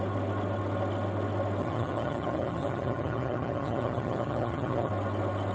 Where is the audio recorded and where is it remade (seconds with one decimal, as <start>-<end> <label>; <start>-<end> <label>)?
0.0-1.6 recorded; 1.6-4.9 remade; 4.9-5.5 recorded